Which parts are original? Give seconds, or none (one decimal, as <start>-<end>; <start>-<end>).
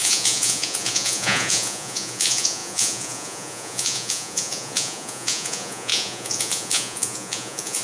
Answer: none